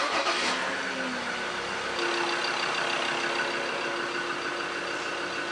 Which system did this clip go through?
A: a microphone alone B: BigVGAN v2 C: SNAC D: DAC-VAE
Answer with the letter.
A